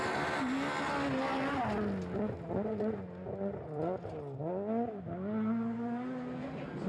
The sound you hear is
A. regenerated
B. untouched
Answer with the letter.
B